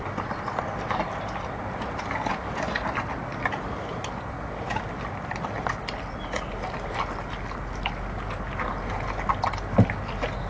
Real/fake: real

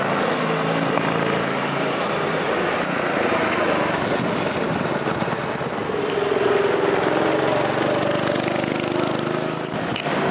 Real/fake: real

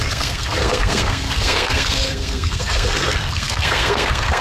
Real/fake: fake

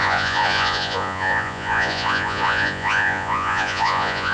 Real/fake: fake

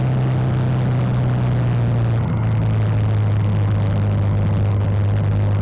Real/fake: real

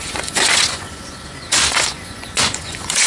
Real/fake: fake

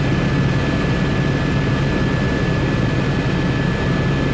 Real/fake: real